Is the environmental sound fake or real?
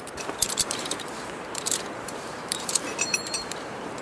fake